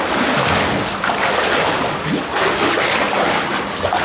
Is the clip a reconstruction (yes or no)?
no